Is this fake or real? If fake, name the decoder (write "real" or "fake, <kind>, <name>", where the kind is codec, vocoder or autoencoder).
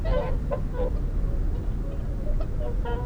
real